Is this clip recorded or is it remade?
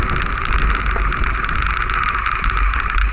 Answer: recorded